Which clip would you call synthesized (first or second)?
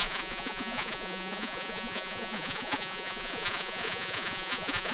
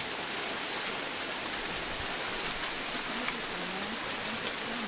first